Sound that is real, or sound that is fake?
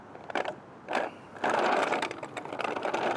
fake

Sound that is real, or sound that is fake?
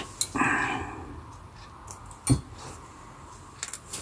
real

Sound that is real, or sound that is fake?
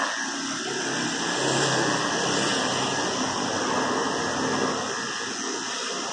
fake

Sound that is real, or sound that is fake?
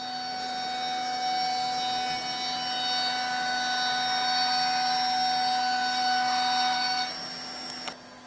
real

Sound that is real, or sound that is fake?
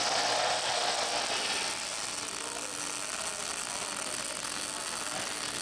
real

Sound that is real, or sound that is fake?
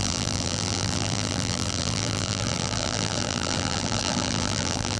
fake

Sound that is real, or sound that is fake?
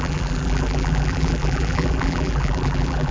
fake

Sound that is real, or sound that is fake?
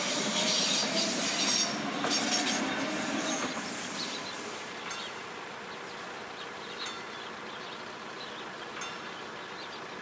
real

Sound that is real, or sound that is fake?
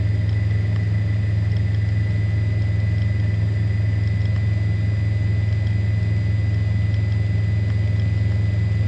real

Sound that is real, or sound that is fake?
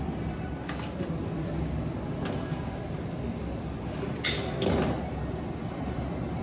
real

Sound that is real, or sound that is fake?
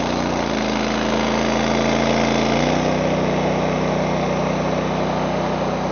real